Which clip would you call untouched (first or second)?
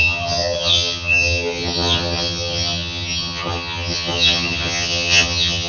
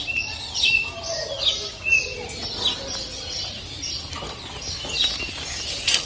second